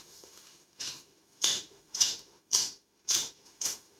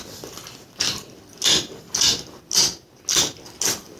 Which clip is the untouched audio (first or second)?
second